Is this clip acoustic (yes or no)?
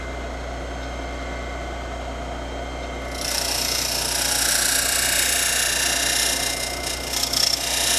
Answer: yes